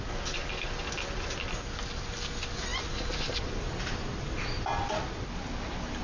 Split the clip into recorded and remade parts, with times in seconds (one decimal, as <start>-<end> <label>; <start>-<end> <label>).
0.0-6.0 recorded